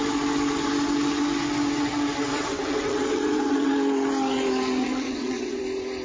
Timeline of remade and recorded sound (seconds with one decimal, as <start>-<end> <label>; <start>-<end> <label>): 0.0-2.3 recorded; 2.3-3.7 remade; 3.7-4.8 recorded; 4.8-5.6 remade; 5.6-6.0 recorded

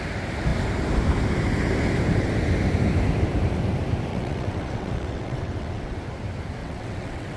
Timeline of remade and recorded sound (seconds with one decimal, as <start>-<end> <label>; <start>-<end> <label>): 0.0-4.1 recorded; 4.1-6.0 remade; 6.0-6.6 recorded; 6.6-7.4 remade

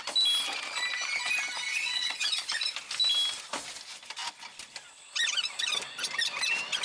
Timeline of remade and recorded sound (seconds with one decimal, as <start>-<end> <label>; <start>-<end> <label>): 0.0-1.7 recorded; 1.7-2.3 remade; 2.3-6.8 recorded

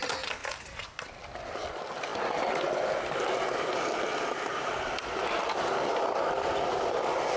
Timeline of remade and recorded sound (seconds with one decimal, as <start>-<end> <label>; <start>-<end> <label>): 0.0-7.4 recorded

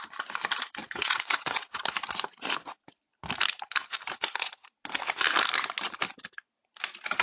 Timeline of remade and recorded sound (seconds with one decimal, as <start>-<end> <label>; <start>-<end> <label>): 0.0-0.8 recorded; 0.8-1.8 remade; 1.8-7.2 recorded

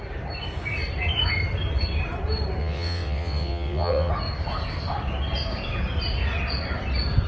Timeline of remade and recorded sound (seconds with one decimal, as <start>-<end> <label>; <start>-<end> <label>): 0.0-2.6 recorded; 2.6-4.1 remade; 4.1-7.3 recorded

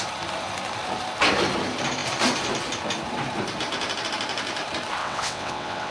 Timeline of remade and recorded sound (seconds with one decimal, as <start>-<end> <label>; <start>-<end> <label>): 0.0-5.0 recorded; 5.0-5.9 remade

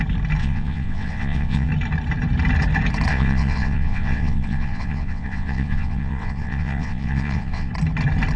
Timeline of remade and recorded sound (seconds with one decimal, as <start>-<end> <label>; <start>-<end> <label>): 0.0-0.4 recorded; 0.4-1.7 remade; 1.7-3.1 recorded; 3.1-7.7 remade; 7.7-8.4 recorded